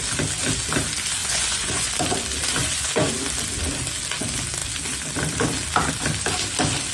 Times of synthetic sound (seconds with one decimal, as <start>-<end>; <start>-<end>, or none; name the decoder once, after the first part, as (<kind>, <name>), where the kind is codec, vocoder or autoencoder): 1.2-1.9 (vocoder, Vocos); 2.6-3.1